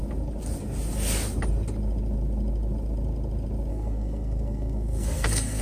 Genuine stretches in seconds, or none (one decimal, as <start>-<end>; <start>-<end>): 0.0-3.7